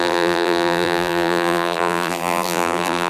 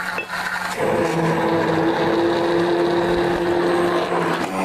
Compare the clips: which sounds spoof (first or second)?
first